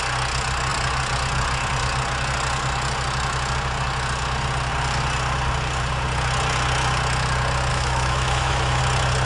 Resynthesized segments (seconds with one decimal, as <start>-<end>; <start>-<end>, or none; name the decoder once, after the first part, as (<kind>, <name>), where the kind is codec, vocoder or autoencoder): 7.7-8.8 (autoencoder, DAC-VAE)